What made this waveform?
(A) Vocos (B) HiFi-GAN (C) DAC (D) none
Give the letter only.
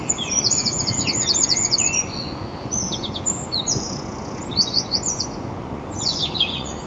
A